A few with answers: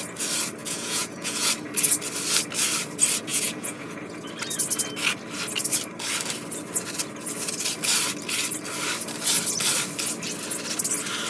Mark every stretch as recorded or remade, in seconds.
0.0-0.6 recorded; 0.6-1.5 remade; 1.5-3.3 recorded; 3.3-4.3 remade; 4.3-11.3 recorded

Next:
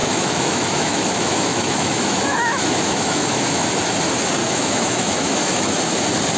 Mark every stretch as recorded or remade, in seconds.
0.0-3.8 remade; 3.8-4.4 recorded; 4.4-5.8 remade; 5.8-6.4 recorded

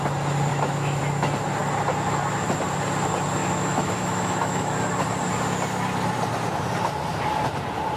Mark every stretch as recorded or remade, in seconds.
0.0-0.5 recorded; 0.5-1.0 remade; 1.0-3.4 recorded; 3.4-4.7 remade; 4.7-8.0 recorded

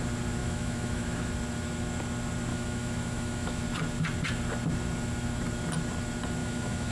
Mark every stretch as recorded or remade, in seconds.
0.0-0.4 recorded; 0.4-1.3 remade; 1.3-2.5 recorded; 2.5-3.6 remade; 3.6-6.4 recorded; 6.4-6.9 remade

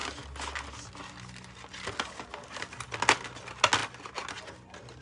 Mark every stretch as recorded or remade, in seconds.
0.0-5.0 recorded

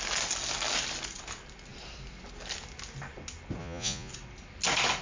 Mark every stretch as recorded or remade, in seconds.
0.0-3.6 recorded; 3.6-4.1 remade; 4.1-5.0 recorded

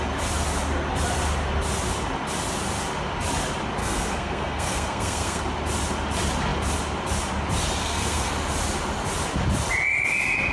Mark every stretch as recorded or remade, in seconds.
0.0-3.8 recorded; 3.8-5.4 remade; 5.4-7.8 recorded; 7.8-8.3 remade; 8.3-10.5 recorded